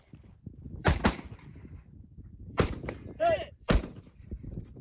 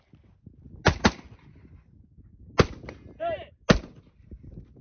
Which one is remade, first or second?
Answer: first